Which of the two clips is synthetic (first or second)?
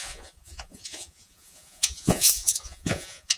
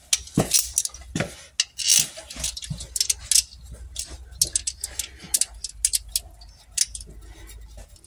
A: first